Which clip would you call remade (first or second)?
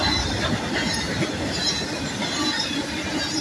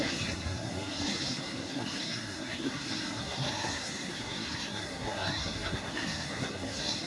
second